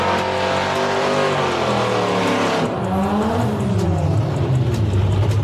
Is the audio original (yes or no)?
yes